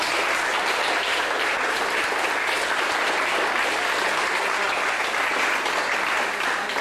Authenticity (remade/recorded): recorded